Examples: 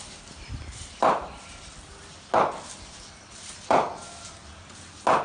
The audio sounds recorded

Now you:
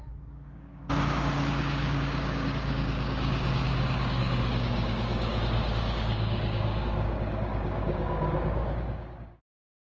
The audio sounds remade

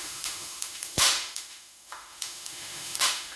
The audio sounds remade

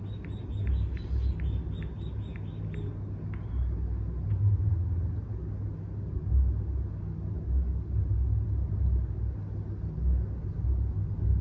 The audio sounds recorded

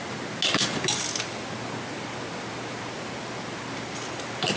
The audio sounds recorded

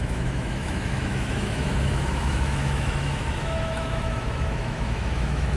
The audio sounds remade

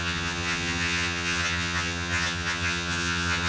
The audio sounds remade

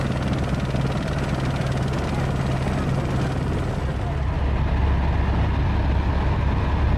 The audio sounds recorded